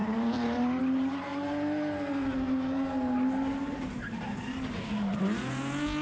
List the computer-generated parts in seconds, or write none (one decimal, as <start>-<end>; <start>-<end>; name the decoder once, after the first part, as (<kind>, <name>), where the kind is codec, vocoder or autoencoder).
0.0-0.8 (vocoder, BigVGAN v2)

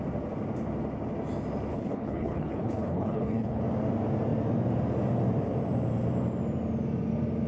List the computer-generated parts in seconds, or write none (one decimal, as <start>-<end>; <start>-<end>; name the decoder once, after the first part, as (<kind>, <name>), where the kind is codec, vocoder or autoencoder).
1.7-3.6 (codec, HILCodec)